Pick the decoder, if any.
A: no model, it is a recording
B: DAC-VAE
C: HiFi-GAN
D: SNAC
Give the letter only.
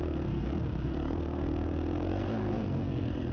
D